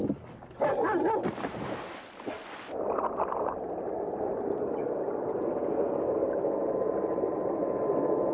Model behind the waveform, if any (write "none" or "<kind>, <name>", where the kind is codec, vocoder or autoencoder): none